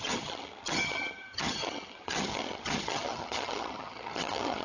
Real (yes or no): no